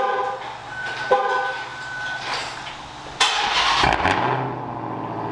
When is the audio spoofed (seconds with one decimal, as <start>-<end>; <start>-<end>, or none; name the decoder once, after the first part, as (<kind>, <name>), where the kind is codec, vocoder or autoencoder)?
0.6-1.2 (vocoder, BigVGAN v2); 1.7-2.9